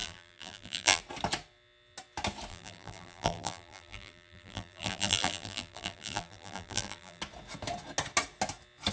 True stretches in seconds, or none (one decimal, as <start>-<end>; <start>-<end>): 1.0-2.5; 7.2-8.9